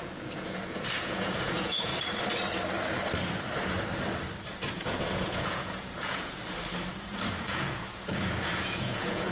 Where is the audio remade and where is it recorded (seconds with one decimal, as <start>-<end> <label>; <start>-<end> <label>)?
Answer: 0.0-1.9 remade; 1.9-4.7 recorded; 4.7-6.4 remade; 6.4-7.3 recorded; 7.3-9.3 remade